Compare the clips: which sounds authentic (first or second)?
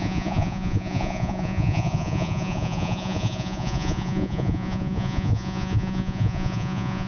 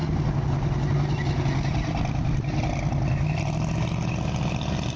second